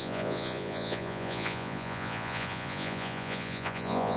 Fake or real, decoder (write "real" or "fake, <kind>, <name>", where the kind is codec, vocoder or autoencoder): fake, vocoder, Vocos